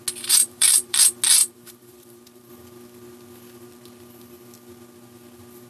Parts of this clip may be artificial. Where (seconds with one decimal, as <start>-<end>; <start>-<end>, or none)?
0.4-1.0; 1.4-2.5